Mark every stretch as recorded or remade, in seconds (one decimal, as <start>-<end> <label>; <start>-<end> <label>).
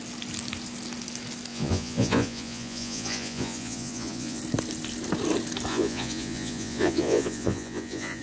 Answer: 0.0-1.5 recorded; 1.5-4.4 remade; 4.4-5.7 recorded; 5.7-8.2 remade